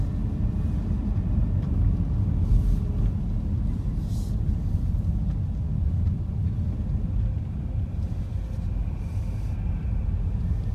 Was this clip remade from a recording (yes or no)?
no